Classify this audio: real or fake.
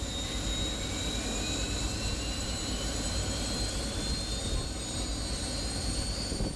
real